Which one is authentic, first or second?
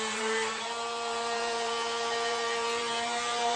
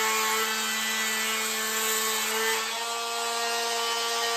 second